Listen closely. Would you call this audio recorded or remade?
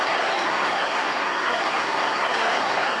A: remade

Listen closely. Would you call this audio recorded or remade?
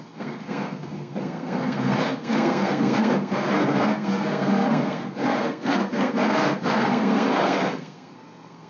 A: remade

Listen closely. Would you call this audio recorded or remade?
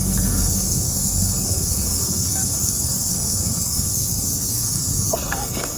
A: remade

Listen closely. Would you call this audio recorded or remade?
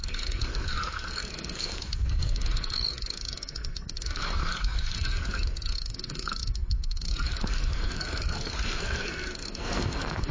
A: remade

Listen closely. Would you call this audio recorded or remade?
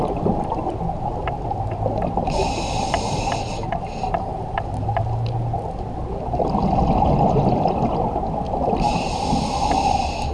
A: recorded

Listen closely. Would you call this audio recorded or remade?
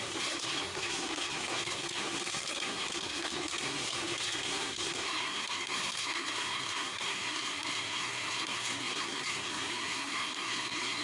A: remade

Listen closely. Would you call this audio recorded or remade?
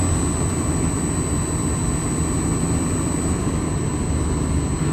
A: recorded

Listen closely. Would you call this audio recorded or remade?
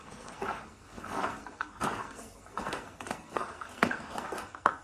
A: remade